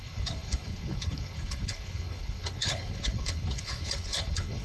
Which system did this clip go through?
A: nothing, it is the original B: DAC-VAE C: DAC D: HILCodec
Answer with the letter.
D